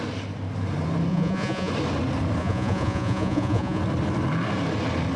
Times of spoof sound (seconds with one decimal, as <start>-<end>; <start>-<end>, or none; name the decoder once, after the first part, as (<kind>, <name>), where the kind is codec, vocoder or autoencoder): 1.1-1.7 (vocoder, Vocos); 2.4-3.8